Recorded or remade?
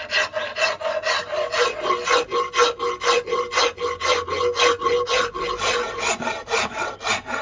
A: recorded